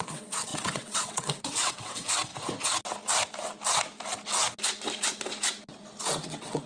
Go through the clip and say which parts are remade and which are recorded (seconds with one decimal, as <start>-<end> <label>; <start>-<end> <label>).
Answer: 0.0-2.3 remade; 2.3-6.3 recorded; 6.3-6.7 remade